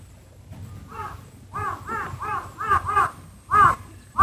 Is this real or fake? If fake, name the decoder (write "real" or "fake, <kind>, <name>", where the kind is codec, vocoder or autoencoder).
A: fake, vocoder, BigVGAN v2